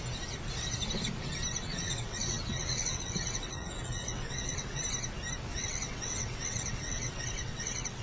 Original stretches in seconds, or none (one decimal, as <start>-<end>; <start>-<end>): 0.0-1.6; 4.8-5.5